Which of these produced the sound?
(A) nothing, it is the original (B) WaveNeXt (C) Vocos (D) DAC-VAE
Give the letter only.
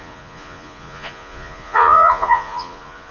C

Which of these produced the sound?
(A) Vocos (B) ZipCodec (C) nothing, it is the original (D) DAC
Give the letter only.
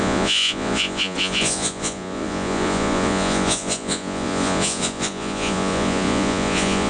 A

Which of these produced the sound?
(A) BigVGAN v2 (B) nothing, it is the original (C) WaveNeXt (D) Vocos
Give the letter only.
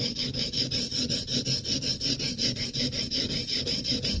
B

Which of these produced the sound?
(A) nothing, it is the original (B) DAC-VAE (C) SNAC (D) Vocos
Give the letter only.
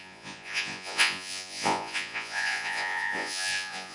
D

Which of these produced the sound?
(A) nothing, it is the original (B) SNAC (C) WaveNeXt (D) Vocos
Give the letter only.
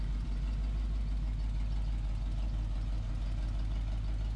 A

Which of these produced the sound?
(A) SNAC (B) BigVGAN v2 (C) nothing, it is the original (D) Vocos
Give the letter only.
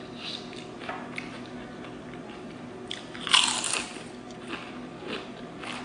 C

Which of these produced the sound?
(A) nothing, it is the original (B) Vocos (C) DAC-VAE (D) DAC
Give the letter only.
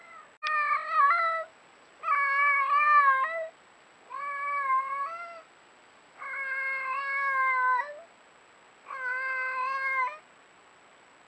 A